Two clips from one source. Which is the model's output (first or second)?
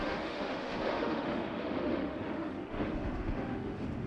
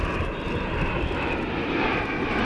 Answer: first